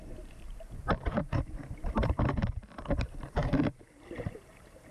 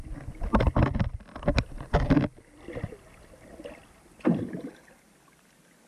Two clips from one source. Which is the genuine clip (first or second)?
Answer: second